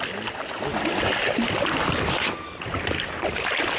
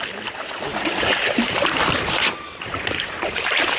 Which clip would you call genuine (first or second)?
first